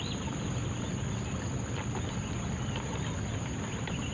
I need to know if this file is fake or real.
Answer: real